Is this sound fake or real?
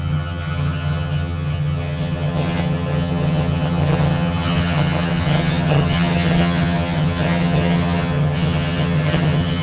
fake